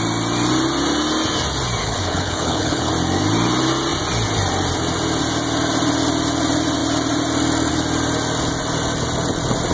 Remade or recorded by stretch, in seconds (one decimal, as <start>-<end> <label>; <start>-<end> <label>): 0.0-1.8 recorded; 1.8-2.9 remade; 2.9-9.7 recorded